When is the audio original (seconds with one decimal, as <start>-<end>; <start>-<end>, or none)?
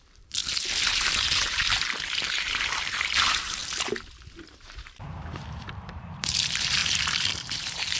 0.4-0.9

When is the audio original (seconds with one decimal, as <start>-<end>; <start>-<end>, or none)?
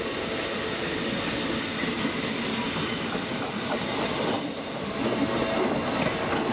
0.0-6.5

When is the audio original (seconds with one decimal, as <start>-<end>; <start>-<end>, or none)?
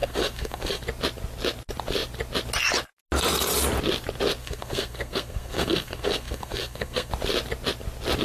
0.8-4.4; 7.1-8.2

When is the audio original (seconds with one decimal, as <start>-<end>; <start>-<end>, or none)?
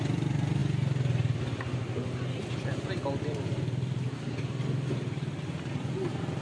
0.0-6.4